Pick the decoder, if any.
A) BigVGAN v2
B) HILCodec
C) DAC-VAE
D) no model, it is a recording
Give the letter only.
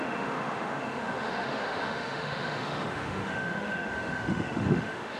C